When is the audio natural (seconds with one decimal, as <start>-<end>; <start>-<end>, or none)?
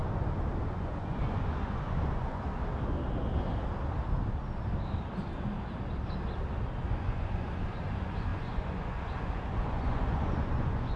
0.0-0.7; 2.4-6.9